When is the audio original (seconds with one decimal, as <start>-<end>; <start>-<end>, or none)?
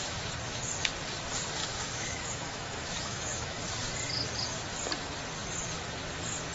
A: 0.0-1.6; 3.7-6.5